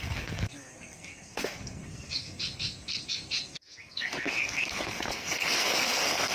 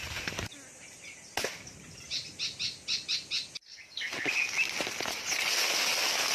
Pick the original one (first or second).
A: second